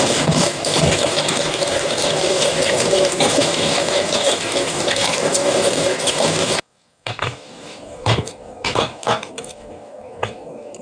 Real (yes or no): no